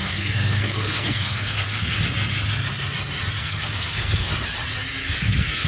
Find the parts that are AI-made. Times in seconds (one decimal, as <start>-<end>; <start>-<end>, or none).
0.0-2.0; 3.4-4.3; 5.0-5.7